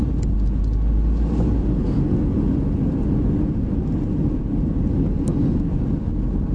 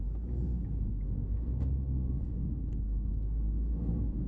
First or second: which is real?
first